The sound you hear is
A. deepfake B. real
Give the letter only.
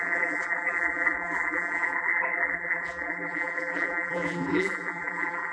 A